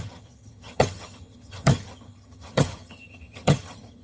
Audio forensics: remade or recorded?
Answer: remade